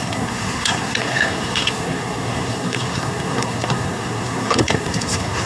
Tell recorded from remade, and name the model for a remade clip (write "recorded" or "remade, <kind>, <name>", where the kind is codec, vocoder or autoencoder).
remade, codec, SNAC